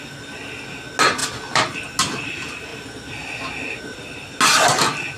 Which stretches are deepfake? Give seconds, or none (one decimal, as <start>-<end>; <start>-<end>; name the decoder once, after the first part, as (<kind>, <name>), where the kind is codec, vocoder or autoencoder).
none